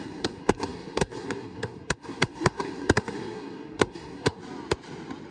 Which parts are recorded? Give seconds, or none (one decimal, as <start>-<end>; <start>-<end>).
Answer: 4.4-5.3